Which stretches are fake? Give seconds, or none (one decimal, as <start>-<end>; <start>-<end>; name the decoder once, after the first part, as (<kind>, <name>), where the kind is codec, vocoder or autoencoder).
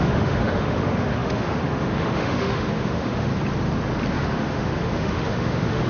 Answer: 0.0-3.3 (autoencoder, DAC-VAE); 4.1-5.9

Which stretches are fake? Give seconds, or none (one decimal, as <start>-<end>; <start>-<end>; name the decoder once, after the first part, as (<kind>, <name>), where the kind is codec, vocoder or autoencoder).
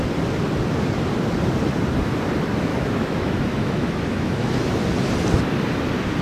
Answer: 2.7-4.5 (autoencoder, DAC-VAE)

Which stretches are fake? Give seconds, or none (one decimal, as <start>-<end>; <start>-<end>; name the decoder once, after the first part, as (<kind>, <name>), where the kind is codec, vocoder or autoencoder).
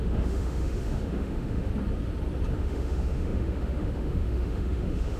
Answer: 0.0-1.7 (autoencoder, DAC-VAE); 2.5-5.2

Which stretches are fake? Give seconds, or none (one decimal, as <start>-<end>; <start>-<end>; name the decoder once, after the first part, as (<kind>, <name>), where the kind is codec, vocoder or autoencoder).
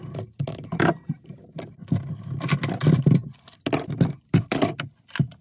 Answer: none